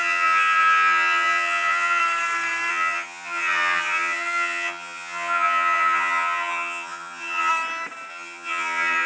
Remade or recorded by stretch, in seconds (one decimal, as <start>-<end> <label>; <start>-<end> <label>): 0.0-2.0 remade; 2.0-2.7 recorded; 2.7-7.5 remade; 7.5-8.1 recorded; 8.1-9.1 remade